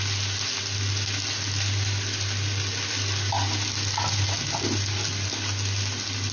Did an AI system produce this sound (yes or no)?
no